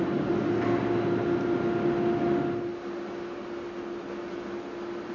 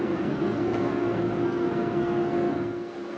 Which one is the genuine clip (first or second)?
first